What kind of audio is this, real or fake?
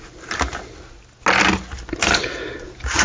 real